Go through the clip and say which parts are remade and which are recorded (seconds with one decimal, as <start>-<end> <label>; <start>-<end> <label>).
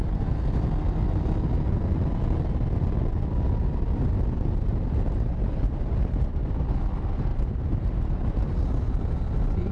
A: 0.0-4.7 recorded; 4.7-6.3 remade; 6.3-9.7 recorded